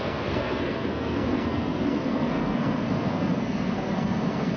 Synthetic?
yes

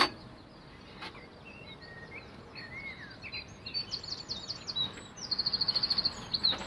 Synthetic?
no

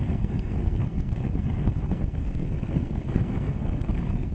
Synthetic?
yes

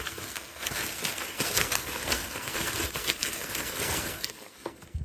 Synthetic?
yes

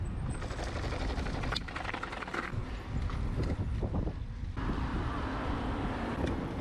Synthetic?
no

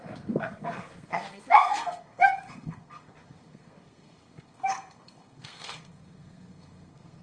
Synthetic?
yes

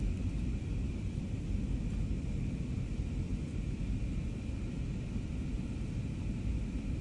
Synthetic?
no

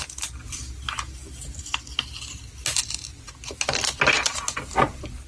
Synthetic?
no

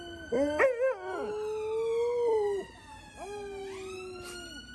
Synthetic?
no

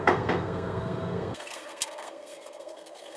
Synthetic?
yes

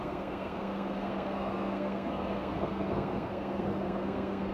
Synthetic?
yes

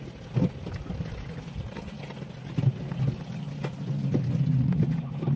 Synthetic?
no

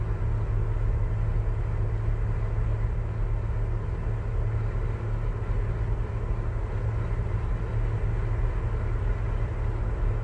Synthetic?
no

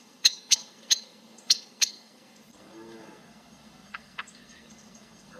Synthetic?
yes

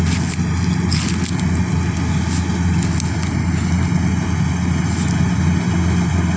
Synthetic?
no